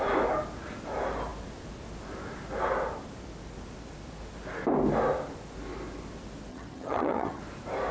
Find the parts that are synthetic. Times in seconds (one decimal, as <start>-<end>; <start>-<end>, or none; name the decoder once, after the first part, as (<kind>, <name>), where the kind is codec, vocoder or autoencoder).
6.5-7.4 (vocoder, HiFi-GAN)